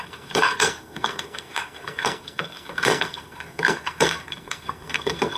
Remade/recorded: remade